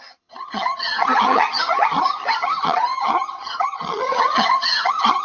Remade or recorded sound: remade